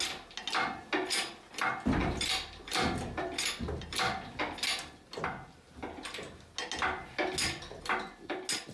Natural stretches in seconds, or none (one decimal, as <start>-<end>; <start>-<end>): 0.0-2.0; 4.4-8.7